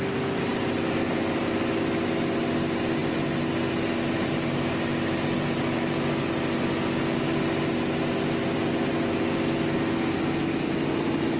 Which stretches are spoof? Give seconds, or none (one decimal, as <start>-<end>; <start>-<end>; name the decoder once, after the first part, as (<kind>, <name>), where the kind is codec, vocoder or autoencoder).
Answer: none

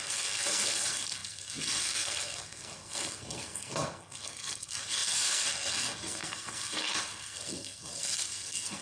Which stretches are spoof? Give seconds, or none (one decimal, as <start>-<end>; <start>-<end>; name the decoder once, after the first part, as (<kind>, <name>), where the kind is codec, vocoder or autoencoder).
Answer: 0.0-8.8 (codec, SNAC)

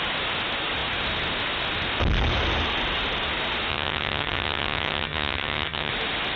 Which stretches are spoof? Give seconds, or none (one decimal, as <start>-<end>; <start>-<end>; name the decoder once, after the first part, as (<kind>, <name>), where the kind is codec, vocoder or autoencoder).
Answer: 3.7-5.9 (vocoder, HiFi-GAN)

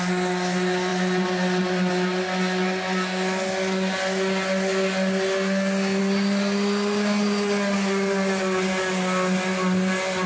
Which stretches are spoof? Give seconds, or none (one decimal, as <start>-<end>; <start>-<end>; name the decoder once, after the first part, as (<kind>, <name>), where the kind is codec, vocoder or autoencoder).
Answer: none

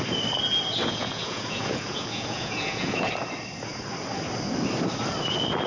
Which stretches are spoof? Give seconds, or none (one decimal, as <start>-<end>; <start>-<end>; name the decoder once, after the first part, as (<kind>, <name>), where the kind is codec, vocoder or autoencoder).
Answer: 1.0-3.1 (vocoder, Vocos)

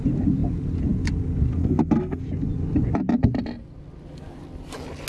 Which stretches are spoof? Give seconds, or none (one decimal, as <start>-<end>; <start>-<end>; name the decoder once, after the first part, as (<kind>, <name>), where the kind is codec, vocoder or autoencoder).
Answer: 1.6-2.2 (codec, SNAC)